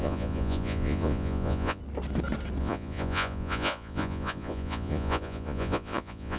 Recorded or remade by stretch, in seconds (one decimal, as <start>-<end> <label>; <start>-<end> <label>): 0.0-1.8 remade; 1.8-2.6 recorded; 2.6-6.4 remade